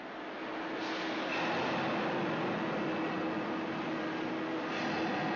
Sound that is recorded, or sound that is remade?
recorded